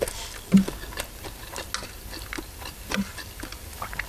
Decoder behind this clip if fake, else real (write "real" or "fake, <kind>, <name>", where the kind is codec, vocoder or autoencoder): real